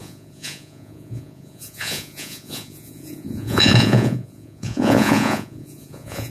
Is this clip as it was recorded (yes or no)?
no